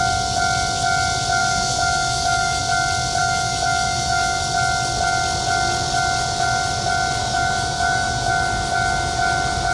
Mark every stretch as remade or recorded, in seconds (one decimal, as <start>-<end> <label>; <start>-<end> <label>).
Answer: 0.0-1.4 recorded; 1.4-2.6 remade; 2.6-3.2 recorded; 3.2-4.4 remade; 4.4-7.2 recorded; 7.2-8.3 remade; 8.3-9.7 recorded